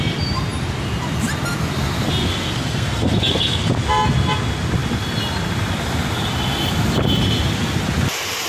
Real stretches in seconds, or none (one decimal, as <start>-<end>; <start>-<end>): 0.0-2.3; 3.7-8.5